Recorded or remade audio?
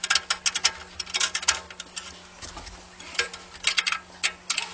recorded